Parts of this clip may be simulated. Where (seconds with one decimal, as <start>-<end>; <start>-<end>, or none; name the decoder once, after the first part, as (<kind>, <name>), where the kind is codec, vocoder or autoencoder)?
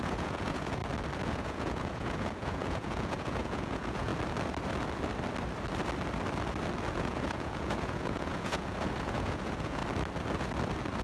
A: 0.0-0.8 (vocoder, Vocos); 1.3-4.1; 6.9-9.8